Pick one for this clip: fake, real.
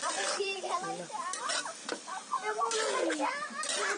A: real